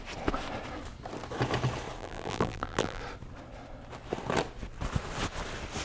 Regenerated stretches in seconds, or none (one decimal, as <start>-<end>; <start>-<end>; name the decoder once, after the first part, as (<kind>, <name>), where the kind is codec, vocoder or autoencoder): 2.0-3.0 (vocoder, BigVGAN v2)

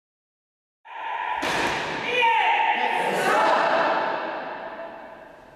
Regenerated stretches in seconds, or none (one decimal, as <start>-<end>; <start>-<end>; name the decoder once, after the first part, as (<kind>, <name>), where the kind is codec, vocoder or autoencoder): none

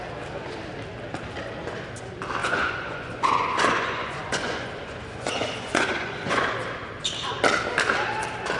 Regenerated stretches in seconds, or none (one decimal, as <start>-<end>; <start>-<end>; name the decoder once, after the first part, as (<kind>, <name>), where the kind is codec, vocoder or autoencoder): 2.4-6.5 (vocoder, Vocos)

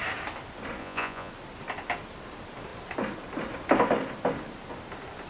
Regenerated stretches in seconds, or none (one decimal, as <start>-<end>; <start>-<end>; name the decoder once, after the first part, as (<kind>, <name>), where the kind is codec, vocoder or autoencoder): 0.8-1.3 (vocoder, Vocos)

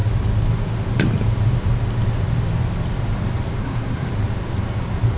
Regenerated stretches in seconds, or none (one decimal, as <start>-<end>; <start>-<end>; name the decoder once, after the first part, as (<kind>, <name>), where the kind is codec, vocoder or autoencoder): 3.6-4.1 (codec, SNAC)